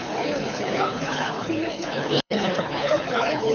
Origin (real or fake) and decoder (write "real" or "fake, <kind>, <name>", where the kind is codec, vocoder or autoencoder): fake, codec, HILCodec